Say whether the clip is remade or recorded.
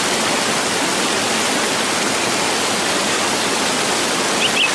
recorded